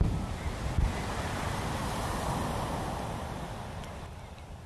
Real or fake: real